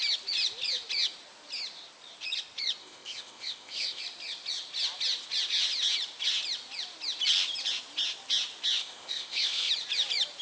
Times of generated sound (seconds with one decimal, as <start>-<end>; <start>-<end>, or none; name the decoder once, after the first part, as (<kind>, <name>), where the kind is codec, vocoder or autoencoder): 2.8-4.0 (codec, ZipCodec); 8.8-9.7